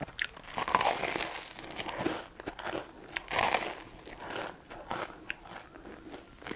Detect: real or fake real